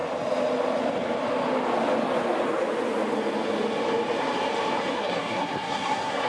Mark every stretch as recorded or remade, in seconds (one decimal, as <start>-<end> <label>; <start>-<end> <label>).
0.0-4.9 recorded; 4.9-6.3 remade